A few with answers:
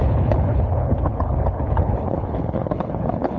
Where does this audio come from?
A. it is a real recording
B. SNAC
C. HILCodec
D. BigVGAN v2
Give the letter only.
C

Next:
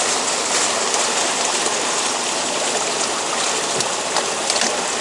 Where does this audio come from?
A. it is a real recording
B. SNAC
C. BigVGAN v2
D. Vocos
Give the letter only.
A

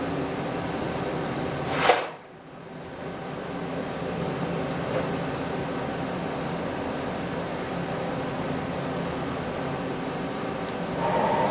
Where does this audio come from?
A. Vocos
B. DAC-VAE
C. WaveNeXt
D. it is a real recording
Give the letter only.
D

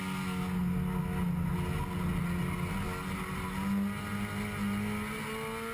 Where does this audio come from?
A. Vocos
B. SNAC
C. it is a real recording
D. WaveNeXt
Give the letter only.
C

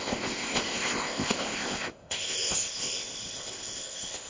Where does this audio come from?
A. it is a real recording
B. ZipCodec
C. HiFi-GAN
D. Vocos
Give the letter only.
B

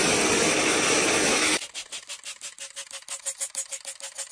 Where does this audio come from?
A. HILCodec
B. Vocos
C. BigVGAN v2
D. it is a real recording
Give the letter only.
D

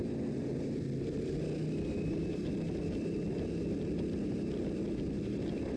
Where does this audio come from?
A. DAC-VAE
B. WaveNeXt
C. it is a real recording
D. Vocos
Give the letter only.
C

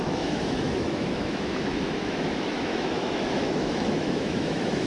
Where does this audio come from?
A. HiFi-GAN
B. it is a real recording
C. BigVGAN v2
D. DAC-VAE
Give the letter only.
D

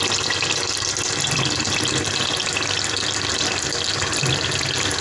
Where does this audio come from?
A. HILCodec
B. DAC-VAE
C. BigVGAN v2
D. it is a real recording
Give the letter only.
D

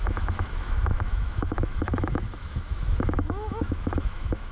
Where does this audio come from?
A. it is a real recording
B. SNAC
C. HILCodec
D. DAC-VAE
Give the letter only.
D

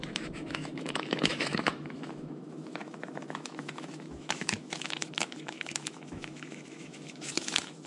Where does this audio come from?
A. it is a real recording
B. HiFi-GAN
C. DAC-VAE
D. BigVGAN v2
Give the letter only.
C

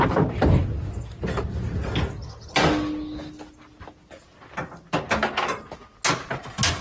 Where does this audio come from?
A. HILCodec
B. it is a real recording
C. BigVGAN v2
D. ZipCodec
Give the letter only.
B